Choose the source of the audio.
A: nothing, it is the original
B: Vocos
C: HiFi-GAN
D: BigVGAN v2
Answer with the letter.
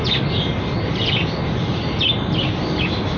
A